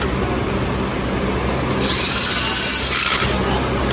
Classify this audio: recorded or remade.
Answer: recorded